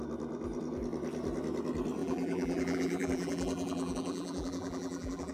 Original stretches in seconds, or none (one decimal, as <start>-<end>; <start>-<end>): 0.0-2.0